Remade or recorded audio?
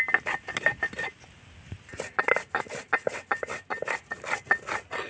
recorded